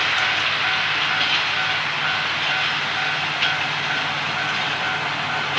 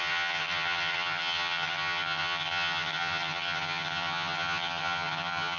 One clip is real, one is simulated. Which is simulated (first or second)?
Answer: second